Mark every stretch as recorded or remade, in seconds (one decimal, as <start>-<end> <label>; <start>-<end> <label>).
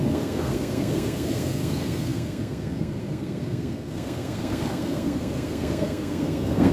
0.0-6.7 remade